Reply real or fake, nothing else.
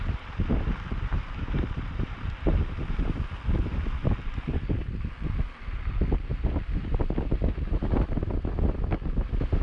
fake